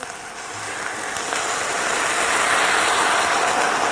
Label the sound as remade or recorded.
recorded